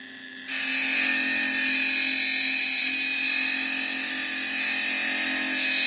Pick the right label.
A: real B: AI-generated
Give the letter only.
A